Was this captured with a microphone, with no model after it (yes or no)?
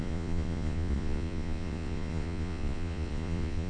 no